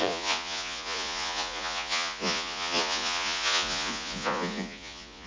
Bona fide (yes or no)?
no